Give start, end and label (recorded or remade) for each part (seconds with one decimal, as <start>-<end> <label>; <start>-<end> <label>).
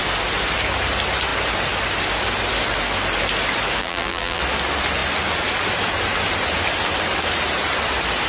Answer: 0.0-3.8 recorded; 3.8-4.4 remade; 4.4-8.3 recorded